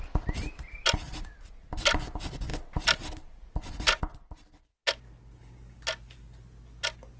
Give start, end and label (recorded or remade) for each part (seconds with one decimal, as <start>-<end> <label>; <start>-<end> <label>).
0.0-7.2 recorded